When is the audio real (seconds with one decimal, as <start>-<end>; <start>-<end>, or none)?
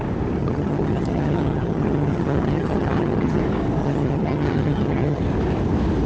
0.0-0.4; 3.4-3.8; 5.2-6.1